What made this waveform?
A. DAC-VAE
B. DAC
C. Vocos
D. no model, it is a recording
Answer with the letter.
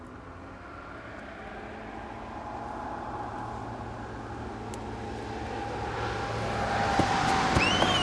D